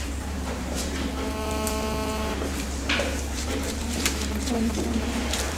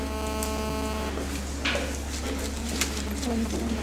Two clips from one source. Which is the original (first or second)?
second